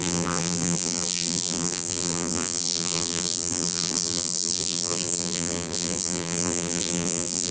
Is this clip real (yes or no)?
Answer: no